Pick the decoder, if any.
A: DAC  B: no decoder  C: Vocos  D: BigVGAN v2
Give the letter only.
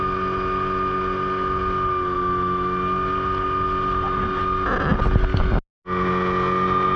B